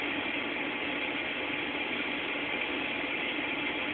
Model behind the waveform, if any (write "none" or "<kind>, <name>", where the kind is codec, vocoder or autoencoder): none